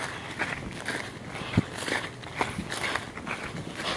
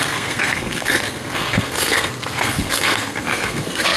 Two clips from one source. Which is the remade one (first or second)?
second